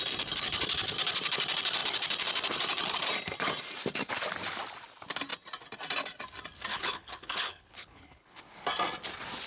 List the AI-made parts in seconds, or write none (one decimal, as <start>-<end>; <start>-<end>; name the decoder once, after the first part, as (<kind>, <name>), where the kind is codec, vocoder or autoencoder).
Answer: 6.7-8.4 (codec, HILCodec)